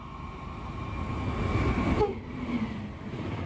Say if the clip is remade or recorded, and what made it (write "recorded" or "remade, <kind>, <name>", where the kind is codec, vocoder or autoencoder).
recorded